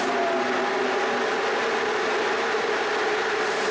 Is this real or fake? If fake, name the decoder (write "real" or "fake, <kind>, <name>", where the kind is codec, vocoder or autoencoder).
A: real